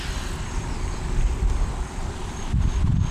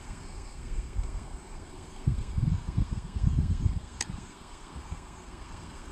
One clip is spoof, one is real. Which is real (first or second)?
first